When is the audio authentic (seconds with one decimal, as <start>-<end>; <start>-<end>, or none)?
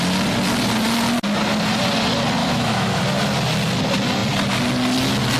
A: 0.0-2.4; 3.0-5.4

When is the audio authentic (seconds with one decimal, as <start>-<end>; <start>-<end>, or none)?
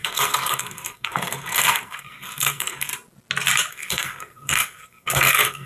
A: 2.9-3.7